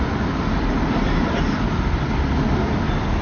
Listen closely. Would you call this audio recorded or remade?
recorded